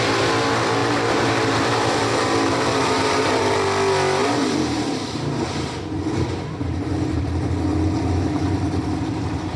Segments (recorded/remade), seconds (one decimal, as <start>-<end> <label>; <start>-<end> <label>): 0.0-0.8 recorded; 0.8-3.4 remade; 3.4-4.2 recorded; 4.2-7.2 remade; 7.2-9.6 recorded